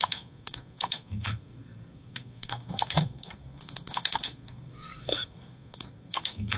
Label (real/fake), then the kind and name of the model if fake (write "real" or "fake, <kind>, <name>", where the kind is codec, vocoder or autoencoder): fake, codec, SNAC